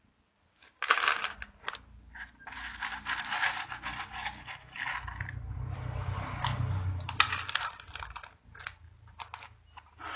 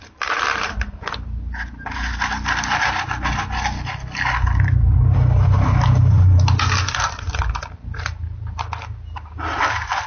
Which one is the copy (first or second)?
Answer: second